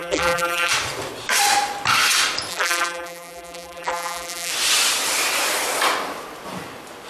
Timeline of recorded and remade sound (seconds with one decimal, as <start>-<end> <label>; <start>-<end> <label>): 0.0-0.7 remade; 0.7-2.5 recorded; 2.5-4.5 remade; 4.5-7.1 recorded